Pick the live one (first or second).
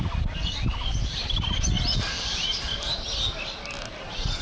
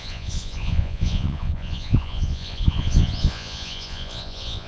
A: first